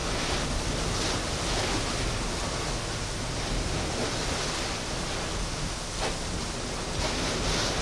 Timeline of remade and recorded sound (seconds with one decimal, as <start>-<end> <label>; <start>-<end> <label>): 0.0-7.8 recorded